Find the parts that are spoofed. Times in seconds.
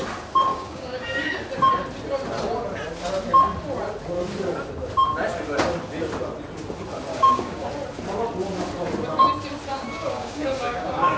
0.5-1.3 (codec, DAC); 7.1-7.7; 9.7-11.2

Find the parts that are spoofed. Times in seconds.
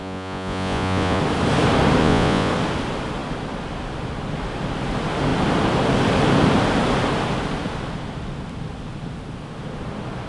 0.0-1.2 (vocoder, Vocos); 2.0-2.5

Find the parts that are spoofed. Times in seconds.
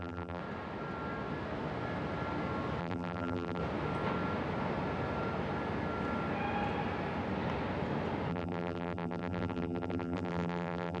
0.0-0.4 (vocoder, BigVGAN v2); 2.8-3.6; 8.3-11.0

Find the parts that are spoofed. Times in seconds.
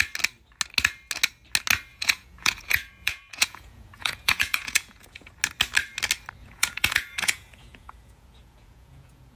1.9-5.3 (vocoder, Vocos); 6.4-9.4